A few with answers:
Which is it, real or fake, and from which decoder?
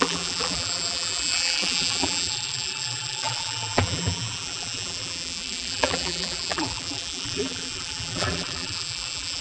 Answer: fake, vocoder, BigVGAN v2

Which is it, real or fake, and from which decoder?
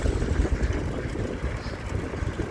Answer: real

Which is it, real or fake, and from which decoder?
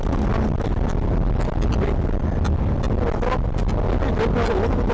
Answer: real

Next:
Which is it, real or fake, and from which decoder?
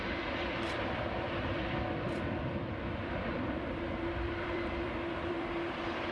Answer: fake, vocoder, BigVGAN v2